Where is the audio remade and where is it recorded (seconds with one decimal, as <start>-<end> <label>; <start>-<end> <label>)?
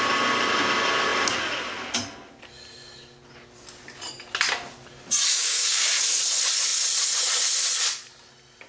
0.0-5.3 recorded; 5.3-5.9 remade; 5.9-8.7 recorded